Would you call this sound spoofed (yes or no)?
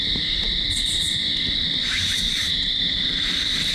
no